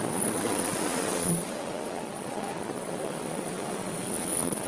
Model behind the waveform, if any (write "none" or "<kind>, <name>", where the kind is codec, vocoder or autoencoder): vocoder, Vocos